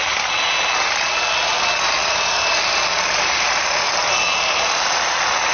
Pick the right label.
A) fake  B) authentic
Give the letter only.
B